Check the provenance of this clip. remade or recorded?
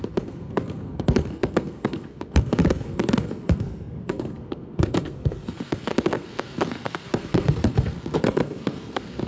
remade